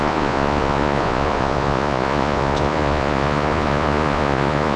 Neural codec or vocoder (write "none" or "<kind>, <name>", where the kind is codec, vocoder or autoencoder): vocoder, Vocos